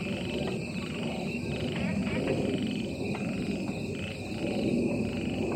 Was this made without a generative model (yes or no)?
yes